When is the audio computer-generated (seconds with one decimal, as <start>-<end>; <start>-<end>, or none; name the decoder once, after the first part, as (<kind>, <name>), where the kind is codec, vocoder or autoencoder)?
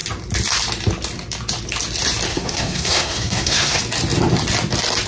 2.3-3.8 (codec, SNAC)